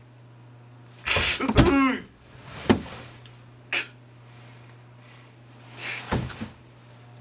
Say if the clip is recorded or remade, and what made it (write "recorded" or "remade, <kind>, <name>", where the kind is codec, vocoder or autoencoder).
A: recorded